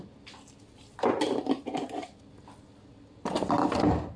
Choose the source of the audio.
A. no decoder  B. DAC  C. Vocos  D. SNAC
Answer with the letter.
A